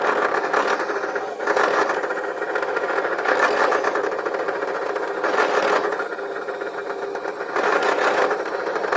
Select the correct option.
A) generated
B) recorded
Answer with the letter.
B